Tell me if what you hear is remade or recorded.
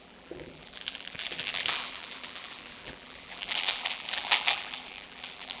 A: remade